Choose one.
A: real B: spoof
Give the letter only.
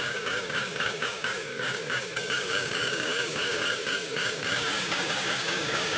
B